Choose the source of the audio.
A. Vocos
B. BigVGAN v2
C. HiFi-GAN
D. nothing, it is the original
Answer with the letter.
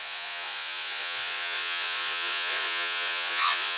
A